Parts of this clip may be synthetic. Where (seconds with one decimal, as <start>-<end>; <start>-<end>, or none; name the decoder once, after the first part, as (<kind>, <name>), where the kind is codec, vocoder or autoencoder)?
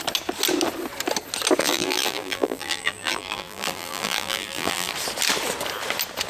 1.6-4.9 (vocoder, BigVGAN v2)